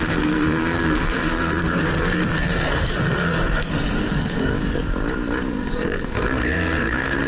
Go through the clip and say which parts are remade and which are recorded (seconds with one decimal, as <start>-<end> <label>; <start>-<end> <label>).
0.0-4.5 remade; 4.5-5.5 recorded; 5.5-7.3 remade